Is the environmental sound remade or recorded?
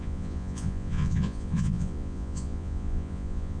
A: remade